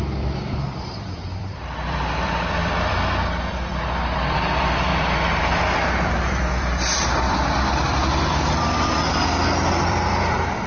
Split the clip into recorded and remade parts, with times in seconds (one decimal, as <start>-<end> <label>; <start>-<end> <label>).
0.0-4.9 remade; 4.9-5.4 recorded; 5.4-10.7 remade